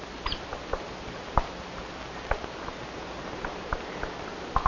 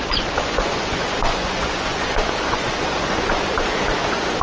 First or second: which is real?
first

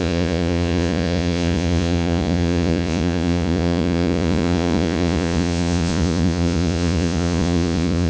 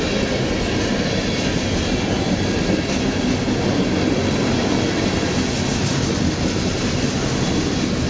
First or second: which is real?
second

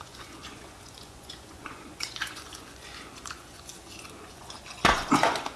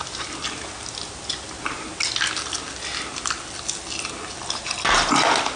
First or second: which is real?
second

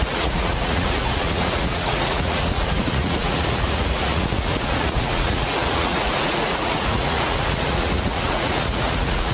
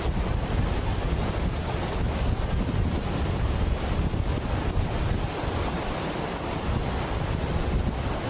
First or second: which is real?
second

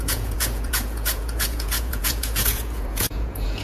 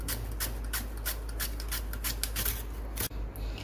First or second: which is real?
second